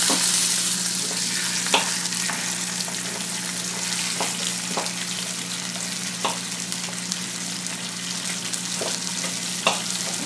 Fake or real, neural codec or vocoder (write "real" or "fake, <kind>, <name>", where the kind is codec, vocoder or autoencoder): real